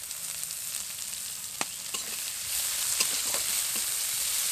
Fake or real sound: real